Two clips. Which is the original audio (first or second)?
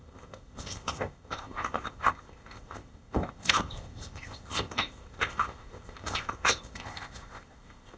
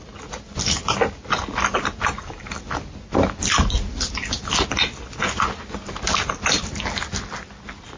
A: second